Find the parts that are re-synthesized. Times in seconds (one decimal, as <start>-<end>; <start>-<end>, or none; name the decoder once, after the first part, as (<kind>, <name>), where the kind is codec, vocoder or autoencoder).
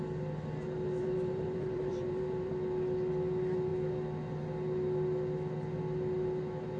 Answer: 1.0-2.5 (vocoder, BigVGAN v2)